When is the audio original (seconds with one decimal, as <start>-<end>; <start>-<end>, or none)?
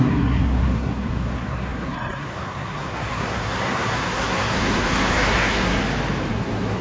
5.8-6.3